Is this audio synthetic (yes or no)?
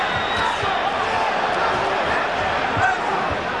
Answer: no